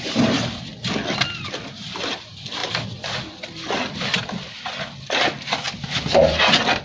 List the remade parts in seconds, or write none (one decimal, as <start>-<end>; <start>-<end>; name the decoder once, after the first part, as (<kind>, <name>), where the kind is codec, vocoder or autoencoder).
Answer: none